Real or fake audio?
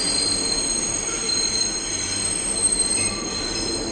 real